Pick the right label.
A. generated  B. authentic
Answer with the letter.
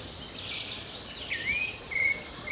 B